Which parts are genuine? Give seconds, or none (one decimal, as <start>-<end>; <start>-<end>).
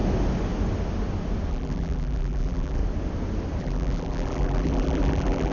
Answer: 0.0-1.5; 2.8-3.6